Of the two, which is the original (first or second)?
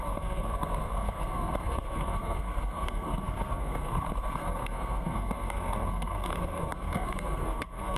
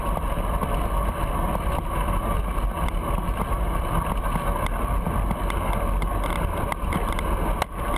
second